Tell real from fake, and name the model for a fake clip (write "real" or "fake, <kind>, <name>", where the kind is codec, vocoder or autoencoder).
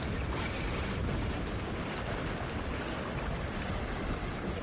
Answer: real